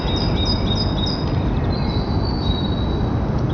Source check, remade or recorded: recorded